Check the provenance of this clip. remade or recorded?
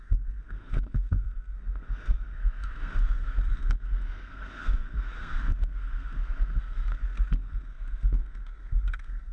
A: remade